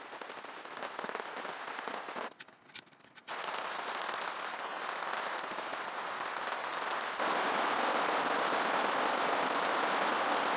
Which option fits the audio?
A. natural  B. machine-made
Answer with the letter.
A